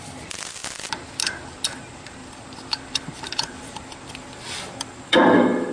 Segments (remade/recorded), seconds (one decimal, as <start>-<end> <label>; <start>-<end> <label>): 0.0-2.2 recorded; 2.2-5.7 remade